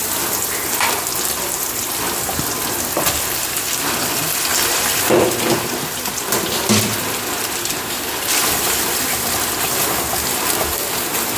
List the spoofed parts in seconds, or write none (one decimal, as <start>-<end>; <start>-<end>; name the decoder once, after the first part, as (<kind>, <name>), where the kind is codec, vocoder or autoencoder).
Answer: 0.0-11.4 (vocoder, BigVGAN v2)

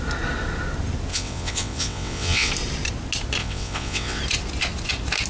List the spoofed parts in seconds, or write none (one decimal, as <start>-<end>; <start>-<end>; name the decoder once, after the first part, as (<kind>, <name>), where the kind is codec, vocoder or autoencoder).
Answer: 1.1-2.5 (vocoder, WaveNeXt); 3.4-4.2

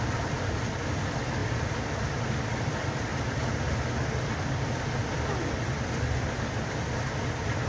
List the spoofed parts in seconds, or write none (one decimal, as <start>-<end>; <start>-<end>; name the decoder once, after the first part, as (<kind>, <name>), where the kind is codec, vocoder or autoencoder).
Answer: 0.0-3.1 (vocoder, BigVGAN v2); 7.2-7.7

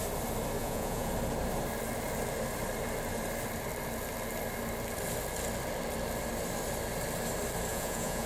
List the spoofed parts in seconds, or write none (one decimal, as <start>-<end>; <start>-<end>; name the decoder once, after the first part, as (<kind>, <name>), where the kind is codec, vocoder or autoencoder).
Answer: 0.6-1.1 (vocoder, Vocos); 7.7-8.3

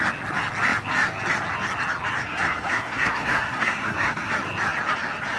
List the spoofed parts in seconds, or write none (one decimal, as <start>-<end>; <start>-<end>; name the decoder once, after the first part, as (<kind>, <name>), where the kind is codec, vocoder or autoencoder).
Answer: 2.2-4.3 (codec, SNAC)

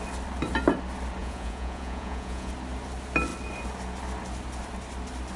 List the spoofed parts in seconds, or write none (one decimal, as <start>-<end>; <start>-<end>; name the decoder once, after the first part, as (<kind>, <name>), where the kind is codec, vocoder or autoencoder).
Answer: 1.2-2.5 (vocoder, Vocos)